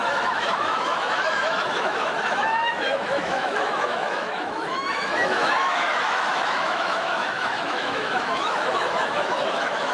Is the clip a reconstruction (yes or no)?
yes